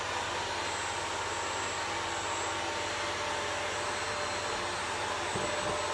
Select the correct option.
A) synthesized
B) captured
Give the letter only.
B